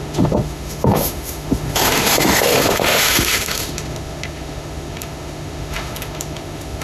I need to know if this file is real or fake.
fake